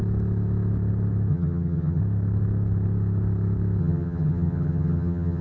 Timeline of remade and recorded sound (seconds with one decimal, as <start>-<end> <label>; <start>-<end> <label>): 0.0-1.3 recorded; 1.3-2.0 remade; 2.0-3.8 recorded; 3.8-5.4 remade